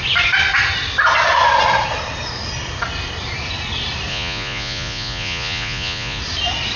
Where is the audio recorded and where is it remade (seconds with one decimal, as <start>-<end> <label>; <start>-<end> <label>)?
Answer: 0.0-4.1 recorded; 4.1-6.2 remade; 6.2-6.8 recorded